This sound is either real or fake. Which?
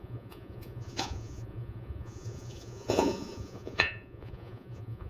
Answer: fake